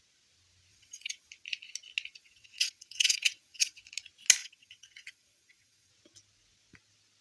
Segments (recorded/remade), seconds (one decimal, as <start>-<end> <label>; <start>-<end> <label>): 0.0-0.7 recorded; 0.7-1.3 remade; 1.3-2.2 recorded; 2.2-3.8 remade; 3.8-4.4 recorded; 4.4-5.9 remade; 5.9-7.2 recorded